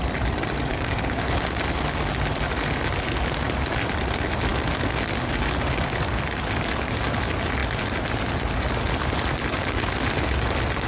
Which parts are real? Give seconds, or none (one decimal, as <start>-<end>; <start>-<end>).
0.0-0.7; 1.6-10.9